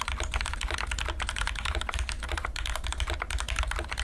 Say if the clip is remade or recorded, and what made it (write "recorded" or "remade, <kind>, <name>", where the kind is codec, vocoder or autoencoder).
recorded